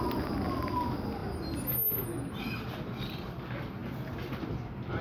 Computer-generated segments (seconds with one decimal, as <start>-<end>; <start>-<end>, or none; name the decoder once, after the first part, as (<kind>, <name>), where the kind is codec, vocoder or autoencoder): none